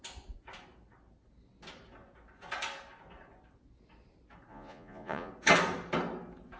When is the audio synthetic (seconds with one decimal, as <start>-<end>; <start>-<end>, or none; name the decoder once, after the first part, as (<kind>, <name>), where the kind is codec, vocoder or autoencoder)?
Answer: 4.5-5.3 (vocoder, Vocos)